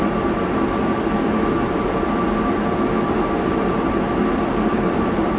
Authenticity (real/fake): real